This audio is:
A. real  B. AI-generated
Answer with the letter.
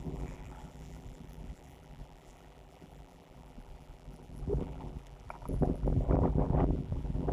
B